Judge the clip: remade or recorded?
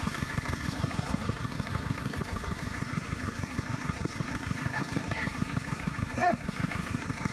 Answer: remade